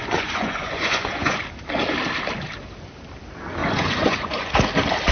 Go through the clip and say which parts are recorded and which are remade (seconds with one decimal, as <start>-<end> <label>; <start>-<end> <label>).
0.0-1.4 remade; 1.4-3.6 recorded; 3.6-4.5 remade; 4.5-5.1 recorded